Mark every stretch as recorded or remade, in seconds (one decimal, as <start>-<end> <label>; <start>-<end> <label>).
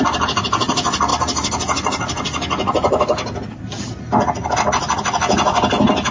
0.0-6.1 recorded